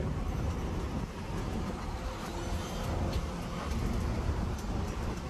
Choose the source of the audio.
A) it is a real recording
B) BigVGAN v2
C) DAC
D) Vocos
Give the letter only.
B